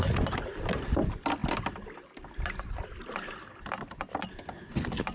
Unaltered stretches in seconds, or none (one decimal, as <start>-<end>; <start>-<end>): 0.0-5.1

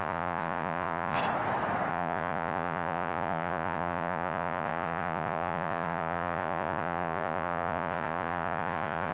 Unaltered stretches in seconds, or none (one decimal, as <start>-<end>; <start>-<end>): 1.2-1.9

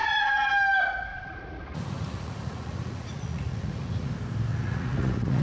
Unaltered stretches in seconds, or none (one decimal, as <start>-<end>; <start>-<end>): 0.5-1.1; 4.1-4.5